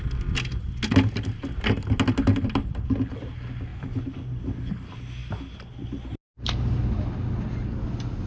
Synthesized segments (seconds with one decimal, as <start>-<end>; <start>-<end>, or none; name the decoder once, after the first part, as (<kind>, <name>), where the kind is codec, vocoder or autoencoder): none